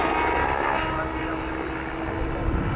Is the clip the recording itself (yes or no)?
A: yes